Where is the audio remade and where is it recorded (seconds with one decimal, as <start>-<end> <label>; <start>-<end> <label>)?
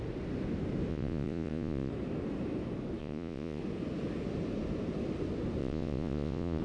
0.0-0.9 recorded; 0.9-1.9 remade; 1.9-3.0 recorded; 3.0-3.6 remade; 3.6-5.6 recorded; 5.6-6.6 remade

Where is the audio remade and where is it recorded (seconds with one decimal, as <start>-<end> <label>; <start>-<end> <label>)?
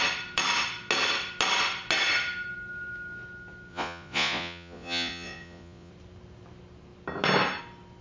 0.0-3.7 recorded; 3.7-5.9 remade; 5.9-8.0 recorded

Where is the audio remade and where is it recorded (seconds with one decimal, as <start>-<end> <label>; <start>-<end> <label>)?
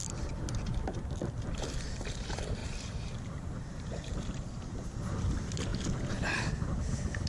0.0-2.6 recorded; 2.6-4.6 remade; 4.6-7.3 recorded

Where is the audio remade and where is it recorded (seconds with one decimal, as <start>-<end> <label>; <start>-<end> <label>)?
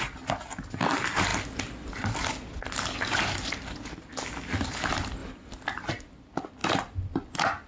0.0-7.7 recorded